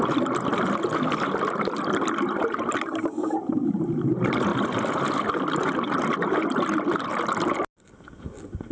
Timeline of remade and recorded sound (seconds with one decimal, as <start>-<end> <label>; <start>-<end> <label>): 0.0-8.7 recorded